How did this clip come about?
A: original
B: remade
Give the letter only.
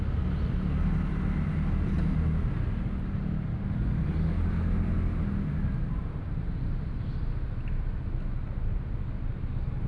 A